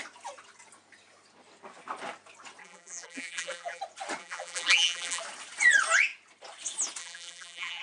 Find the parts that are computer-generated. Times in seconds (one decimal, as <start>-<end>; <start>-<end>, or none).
2.6-3.8; 4.2-5.2; 7.0-7.8